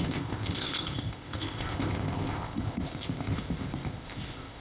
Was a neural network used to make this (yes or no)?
yes